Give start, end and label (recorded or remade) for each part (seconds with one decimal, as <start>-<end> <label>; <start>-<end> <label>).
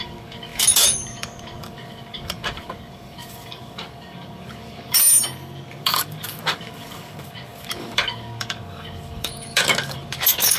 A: 0.0-5.2 remade; 5.2-5.7 recorded; 5.7-10.6 remade